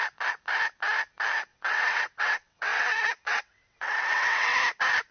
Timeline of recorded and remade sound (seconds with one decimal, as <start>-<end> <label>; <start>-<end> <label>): 0.0-1.5 recorded; 1.5-4.6 remade; 4.6-5.1 recorded